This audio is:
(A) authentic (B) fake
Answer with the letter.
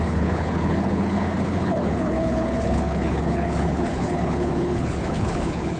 B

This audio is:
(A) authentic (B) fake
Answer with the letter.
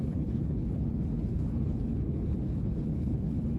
B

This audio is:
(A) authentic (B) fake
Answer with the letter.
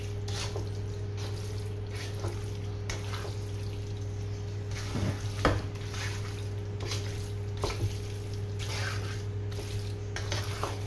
A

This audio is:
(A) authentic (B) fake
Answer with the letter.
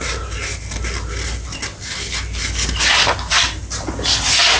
A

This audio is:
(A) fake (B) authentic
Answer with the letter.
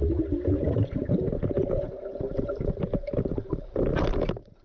B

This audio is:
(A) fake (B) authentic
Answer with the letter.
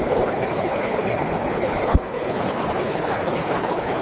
A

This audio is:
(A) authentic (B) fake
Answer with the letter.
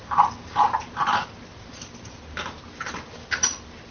A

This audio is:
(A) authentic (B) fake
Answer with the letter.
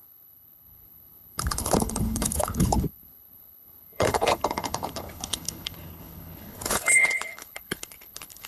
B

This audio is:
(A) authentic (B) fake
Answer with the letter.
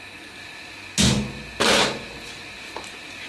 A